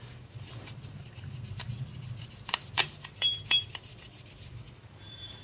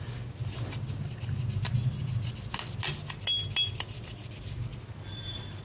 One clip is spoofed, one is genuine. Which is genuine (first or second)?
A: second